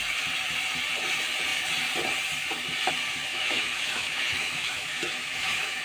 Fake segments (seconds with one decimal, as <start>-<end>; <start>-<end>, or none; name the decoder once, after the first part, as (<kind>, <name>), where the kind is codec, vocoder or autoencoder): 3.3-5.8 (autoencoder, DAC-VAE)